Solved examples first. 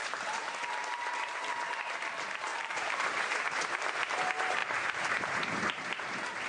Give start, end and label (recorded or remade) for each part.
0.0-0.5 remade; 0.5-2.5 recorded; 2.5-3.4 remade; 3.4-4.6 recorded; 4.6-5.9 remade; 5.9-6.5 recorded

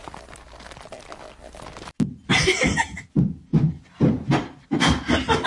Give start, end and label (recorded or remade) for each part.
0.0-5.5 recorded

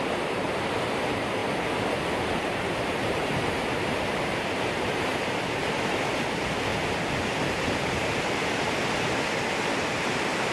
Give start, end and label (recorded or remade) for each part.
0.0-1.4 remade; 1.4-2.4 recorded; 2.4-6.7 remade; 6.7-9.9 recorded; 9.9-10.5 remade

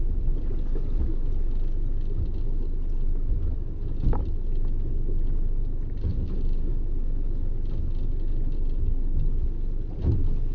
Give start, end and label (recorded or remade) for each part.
0.0-6.1 recorded; 6.1-6.7 remade; 6.7-10.5 recorded